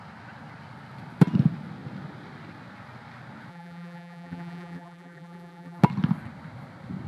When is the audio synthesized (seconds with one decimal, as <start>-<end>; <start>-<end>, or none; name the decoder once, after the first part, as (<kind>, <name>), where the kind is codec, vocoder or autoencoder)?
3.5-5.8 (vocoder, BigVGAN v2)